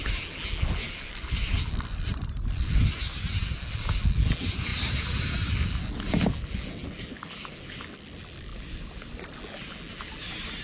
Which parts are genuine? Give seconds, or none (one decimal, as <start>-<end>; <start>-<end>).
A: 0.0-8.5; 9.4-10.6